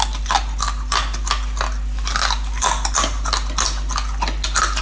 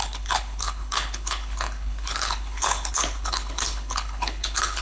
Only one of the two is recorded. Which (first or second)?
first